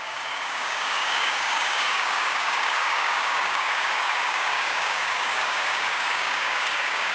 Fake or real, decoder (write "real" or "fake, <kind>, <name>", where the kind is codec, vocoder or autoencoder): fake, codec, DAC